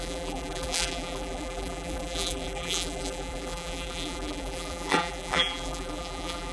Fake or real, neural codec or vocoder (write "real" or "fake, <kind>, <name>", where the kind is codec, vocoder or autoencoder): fake, vocoder, BigVGAN v2